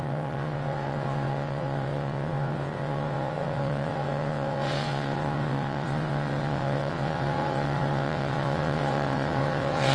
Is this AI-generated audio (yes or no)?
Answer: yes